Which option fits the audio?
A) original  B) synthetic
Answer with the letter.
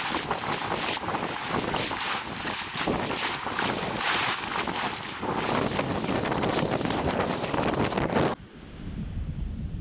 A